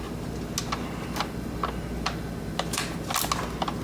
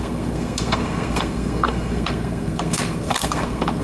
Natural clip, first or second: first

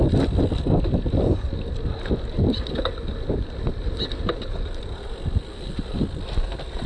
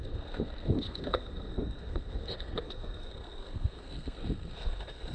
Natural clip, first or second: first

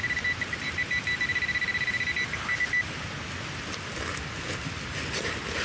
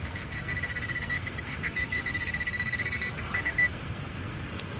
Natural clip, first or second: first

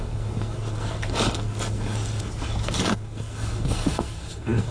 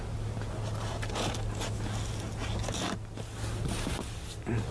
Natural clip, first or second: second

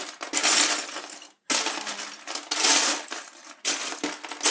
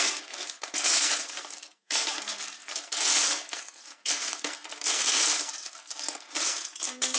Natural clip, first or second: first